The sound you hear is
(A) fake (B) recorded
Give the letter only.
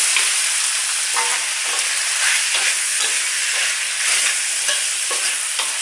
B